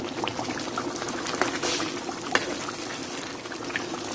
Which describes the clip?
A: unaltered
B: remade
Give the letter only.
A